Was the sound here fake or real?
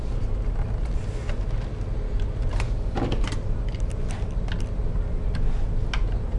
real